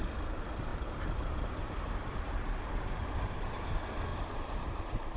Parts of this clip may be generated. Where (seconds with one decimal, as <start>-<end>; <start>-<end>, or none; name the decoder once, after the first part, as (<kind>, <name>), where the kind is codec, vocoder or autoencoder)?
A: 0.7-2.7 (vocoder, BigVGAN v2); 4.1-5.2